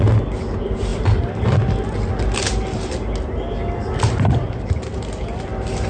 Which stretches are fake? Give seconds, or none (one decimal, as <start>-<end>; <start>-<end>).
none